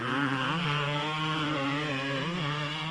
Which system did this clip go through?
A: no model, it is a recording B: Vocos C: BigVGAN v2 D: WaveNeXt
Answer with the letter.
A